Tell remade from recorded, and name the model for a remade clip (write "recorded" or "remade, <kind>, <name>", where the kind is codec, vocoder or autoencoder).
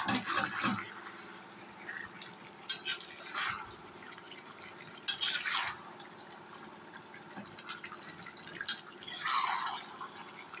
recorded